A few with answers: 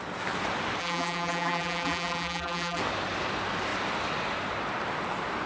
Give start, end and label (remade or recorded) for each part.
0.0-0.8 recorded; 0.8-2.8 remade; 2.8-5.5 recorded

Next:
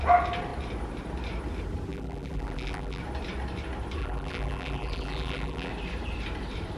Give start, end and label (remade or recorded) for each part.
0.0-1.9 recorded; 1.9-3.0 remade; 3.0-4.0 recorded; 4.0-5.7 remade; 5.7-6.8 recorded

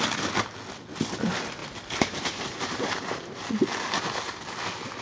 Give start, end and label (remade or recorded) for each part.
0.0-1.6 recorded; 1.6-3.5 remade; 3.5-5.0 recorded

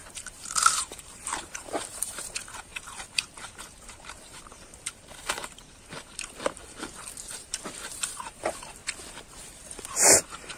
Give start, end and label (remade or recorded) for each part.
0.0-8.8 remade; 8.8-9.3 recorded; 9.3-10.6 remade

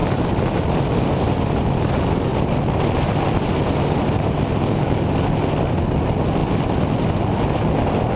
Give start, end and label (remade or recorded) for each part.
0.0-8.2 recorded

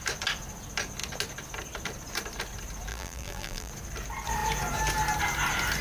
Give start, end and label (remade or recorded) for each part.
0.0-2.9 recorded; 2.9-3.7 remade; 3.7-5.8 recorded

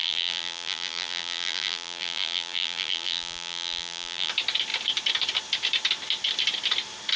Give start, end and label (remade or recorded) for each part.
0.0-4.3 remade; 4.3-7.2 recorded